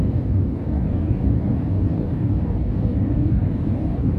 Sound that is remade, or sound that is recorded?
remade